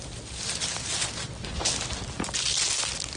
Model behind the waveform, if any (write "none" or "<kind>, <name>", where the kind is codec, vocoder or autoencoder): none